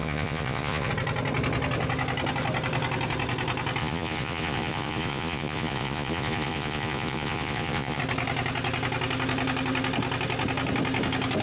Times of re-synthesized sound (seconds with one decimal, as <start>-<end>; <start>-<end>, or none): 0.0-0.9; 3.8-8.0